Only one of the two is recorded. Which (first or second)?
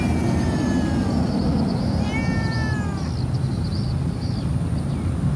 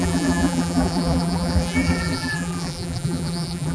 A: first